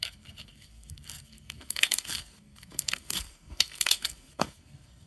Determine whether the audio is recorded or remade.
remade